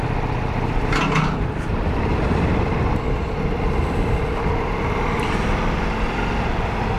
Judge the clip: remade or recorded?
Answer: recorded